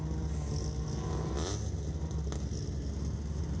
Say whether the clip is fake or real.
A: real